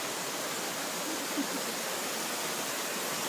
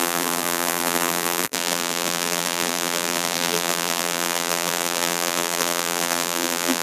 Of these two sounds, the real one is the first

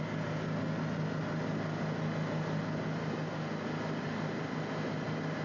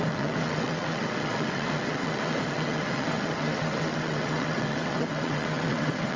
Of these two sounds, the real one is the first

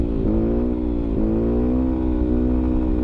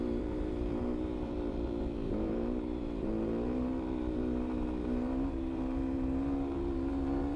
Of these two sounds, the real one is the first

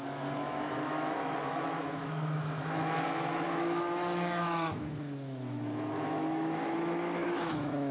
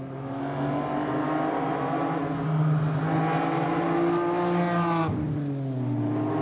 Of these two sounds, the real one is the second